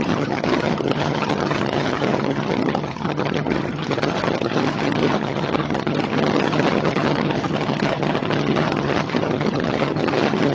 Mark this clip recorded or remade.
remade